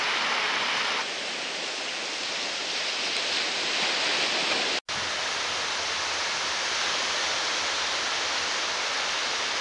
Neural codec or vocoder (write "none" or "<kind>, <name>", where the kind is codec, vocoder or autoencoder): none